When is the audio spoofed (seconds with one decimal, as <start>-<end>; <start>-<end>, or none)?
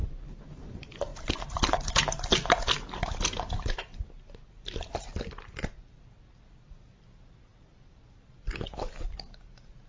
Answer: none